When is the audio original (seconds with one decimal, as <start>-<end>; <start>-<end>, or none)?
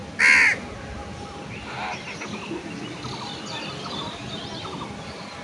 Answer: 0.0-5.4